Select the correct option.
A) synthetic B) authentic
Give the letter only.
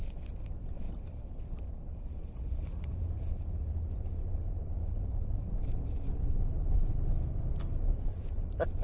A